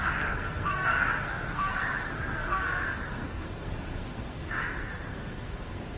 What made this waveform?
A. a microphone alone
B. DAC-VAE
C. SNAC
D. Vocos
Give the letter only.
C